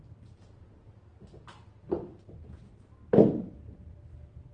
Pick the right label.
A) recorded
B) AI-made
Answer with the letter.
A